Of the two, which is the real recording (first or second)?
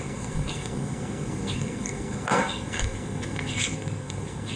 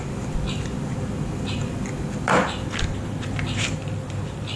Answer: second